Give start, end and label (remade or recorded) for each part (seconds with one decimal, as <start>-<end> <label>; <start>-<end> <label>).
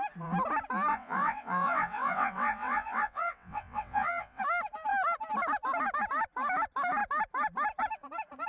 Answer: 0.0-0.9 recorded; 0.9-4.4 remade; 4.4-8.5 recorded